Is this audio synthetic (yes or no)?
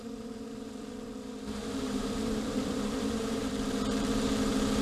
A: yes